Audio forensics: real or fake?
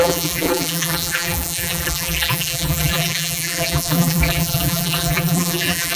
fake